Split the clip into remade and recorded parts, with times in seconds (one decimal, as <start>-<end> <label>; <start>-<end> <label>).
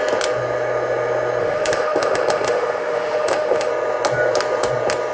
0.0-1.4 recorded; 1.4-3.7 remade; 3.7-5.1 recorded